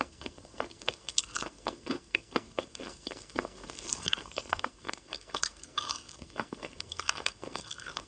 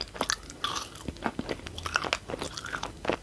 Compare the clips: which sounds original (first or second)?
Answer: second